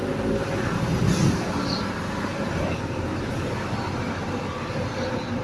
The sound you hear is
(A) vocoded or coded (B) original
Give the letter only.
B